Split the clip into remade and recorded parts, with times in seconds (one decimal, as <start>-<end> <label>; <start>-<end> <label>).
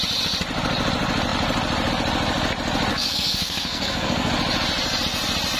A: 0.0-2.9 recorded; 2.9-4.3 remade; 4.3-5.6 recorded